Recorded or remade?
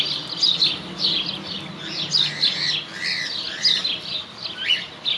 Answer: recorded